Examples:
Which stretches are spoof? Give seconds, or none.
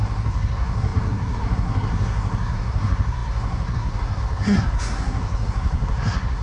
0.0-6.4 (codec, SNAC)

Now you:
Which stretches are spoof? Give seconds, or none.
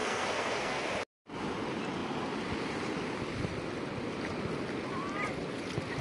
0.0-0.9 (codec, SNAC)